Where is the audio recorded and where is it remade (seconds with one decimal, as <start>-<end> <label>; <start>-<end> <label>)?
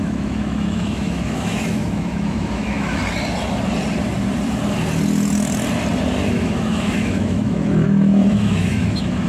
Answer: 0.0-3.0 remade; 3.0-6.3 recorded; 6.3-9.3 remade